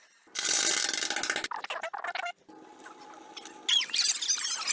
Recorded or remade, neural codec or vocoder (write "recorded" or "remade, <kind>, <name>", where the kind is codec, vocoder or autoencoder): recorded